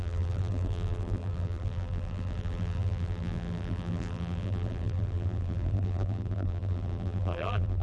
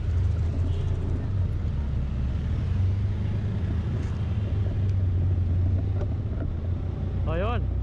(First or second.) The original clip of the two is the second